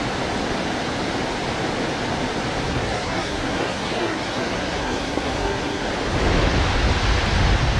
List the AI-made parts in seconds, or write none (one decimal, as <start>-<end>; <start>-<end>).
2.7-5.9